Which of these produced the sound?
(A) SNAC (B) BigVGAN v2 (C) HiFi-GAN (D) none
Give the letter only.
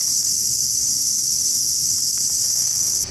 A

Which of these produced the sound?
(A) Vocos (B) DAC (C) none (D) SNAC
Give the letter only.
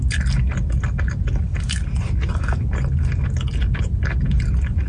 C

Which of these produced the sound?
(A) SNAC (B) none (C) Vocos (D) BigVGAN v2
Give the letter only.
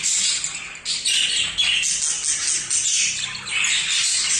B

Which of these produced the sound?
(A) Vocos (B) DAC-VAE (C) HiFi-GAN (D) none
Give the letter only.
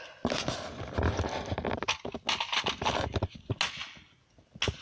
D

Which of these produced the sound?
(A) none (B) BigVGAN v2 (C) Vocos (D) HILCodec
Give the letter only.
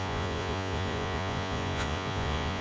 C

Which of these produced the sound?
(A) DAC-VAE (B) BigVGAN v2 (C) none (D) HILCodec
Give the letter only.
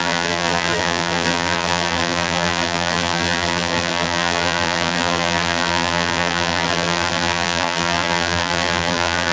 B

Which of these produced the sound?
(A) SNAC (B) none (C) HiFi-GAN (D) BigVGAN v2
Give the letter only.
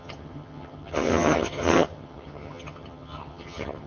C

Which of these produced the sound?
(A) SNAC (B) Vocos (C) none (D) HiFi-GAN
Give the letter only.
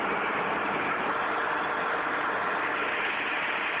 C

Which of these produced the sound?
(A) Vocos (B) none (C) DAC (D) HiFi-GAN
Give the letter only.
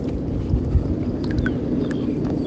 B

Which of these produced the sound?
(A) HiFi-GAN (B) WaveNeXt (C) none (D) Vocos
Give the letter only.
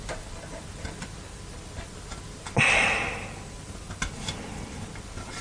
C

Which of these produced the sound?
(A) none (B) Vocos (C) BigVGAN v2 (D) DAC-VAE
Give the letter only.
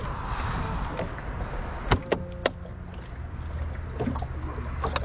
A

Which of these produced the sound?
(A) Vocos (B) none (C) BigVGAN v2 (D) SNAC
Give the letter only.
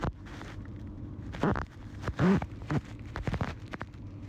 C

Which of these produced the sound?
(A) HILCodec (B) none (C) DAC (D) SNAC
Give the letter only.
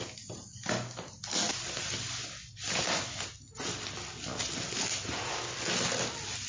B